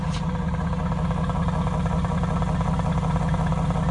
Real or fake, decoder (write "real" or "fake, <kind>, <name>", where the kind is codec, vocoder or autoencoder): real